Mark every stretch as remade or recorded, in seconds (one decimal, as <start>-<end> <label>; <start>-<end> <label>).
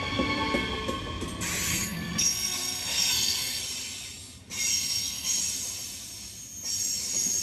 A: 0.0-1.7 recorded; 1.7-3.6 remade; 3.6-4.7 recorded; 4.7-5.4 remade; 5.4-7.4 recorded